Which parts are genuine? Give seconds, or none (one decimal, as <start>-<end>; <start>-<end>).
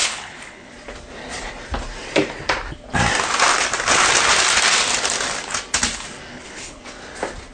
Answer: 0.7-6.3; 6.8-7.5